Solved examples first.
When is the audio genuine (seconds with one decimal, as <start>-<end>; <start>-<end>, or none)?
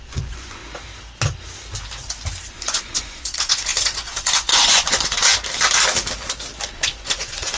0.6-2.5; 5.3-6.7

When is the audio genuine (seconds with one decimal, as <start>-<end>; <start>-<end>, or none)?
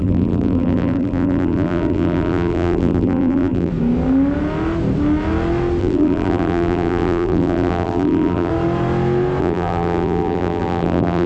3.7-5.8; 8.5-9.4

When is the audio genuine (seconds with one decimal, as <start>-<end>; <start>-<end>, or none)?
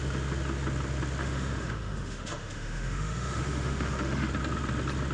0.0-1.2; 4.3-5.1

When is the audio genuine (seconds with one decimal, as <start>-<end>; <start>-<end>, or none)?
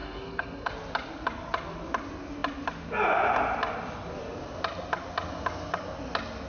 0.7-6.5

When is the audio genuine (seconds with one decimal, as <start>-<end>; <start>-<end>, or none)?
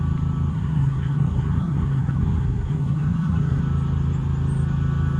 0.0-0.5; 3.6-5.2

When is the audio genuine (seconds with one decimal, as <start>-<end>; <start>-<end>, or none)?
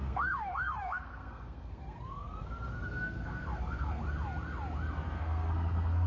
4.0-5.2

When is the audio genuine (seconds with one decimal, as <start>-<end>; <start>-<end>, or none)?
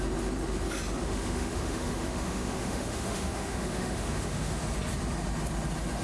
0.0-1.0; 4.6-6.0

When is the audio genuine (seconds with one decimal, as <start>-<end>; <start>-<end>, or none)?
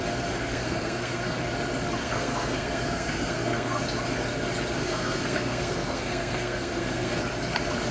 0.0-0.4; 1.4-2.0; 3.8-4.8; 7.2-7.9